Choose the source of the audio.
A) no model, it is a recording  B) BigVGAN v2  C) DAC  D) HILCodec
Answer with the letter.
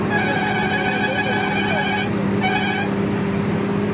A